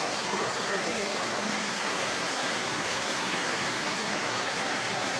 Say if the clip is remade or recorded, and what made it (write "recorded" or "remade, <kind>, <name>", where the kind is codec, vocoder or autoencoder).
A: remade, codec, SNAC